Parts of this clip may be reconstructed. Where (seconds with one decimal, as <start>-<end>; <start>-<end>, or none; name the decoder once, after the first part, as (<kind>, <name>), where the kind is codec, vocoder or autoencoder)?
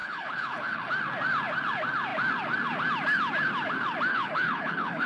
0.0-0.9 (codec, HILCodec); 4.1-5.1